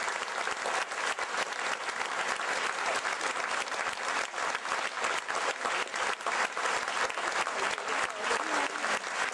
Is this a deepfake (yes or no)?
no